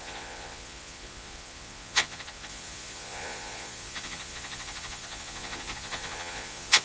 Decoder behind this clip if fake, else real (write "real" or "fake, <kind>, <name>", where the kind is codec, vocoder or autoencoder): fake, vocoder, Vocos